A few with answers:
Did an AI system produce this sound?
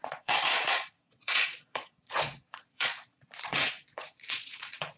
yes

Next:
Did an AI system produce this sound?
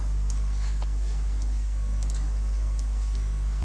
yes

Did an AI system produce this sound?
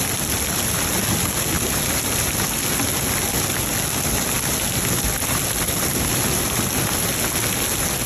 no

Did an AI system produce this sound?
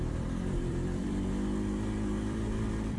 yes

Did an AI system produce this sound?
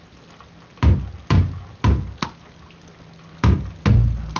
no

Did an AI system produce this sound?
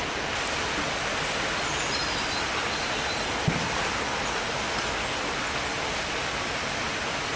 no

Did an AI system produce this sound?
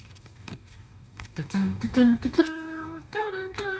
yes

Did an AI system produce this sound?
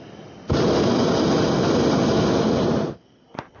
no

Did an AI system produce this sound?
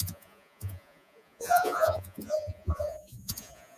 yes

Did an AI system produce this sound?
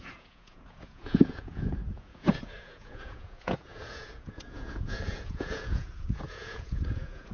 yes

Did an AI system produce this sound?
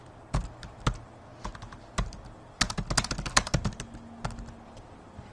no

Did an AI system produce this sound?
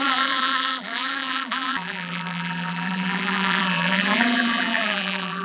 yes